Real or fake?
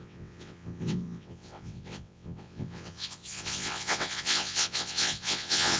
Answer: fake